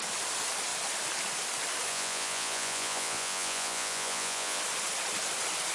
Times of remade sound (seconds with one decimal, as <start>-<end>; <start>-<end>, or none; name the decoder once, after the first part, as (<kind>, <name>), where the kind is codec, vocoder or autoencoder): 1.9-4.6 (vocoder, Vocos)